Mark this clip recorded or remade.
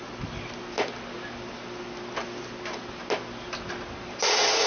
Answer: recorded